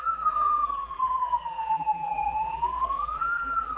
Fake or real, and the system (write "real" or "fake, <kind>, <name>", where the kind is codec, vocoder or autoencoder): fake, vocoder, BigVGAN v2